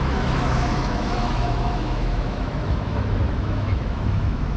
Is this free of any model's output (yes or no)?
no